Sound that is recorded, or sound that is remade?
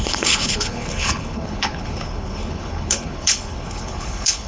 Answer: remade